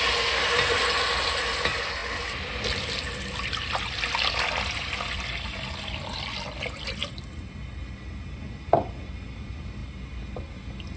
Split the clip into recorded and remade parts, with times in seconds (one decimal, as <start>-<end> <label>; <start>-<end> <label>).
0.0-11.0 recorded